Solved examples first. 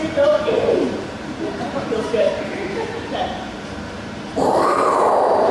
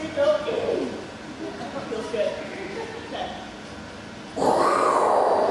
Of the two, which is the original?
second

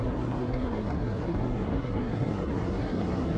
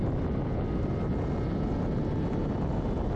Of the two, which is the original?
second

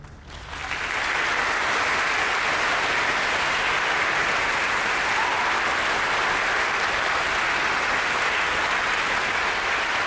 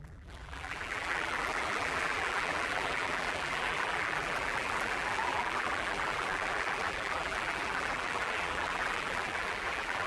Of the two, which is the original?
first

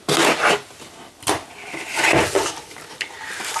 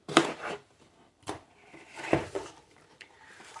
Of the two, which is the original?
first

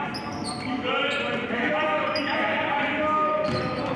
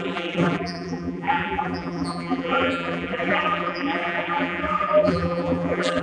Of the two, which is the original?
first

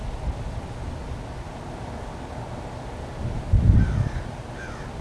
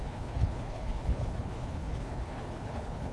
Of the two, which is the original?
first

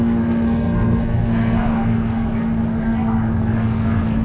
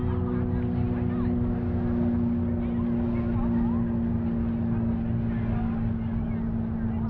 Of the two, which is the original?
second